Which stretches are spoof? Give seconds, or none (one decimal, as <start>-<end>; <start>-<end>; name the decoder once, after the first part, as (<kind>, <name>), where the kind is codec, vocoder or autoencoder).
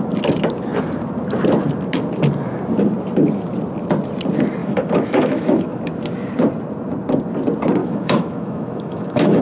4.6-5.8 (autoencoder, DAC-VAE); 7.8-9.4